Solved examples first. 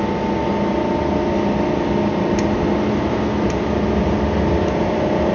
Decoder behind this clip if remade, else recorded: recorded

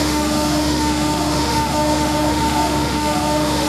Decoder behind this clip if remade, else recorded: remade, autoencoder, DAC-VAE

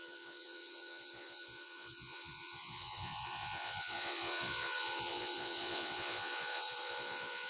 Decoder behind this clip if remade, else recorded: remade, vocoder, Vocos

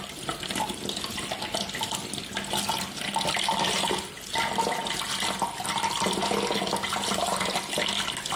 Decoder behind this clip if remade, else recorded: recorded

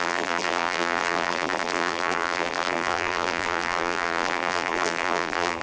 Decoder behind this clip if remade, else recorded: remade, vocoder, BigVGAN v2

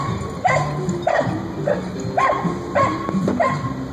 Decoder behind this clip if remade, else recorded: recorded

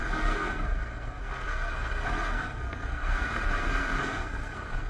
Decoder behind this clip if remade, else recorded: remade, codec, SNAC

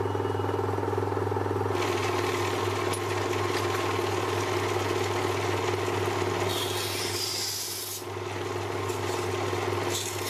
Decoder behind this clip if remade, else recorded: recorded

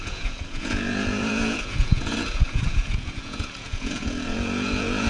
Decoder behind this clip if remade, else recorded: remade, vocoder, Vocos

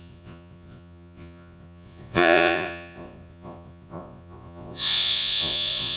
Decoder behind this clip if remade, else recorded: remade, vocoder, Vocos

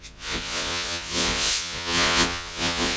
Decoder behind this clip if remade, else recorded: remade, vocoder, Vocos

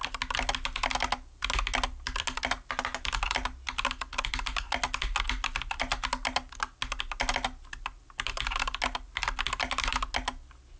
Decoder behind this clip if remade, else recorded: recorded